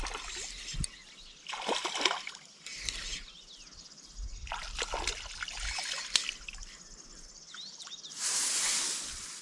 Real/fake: real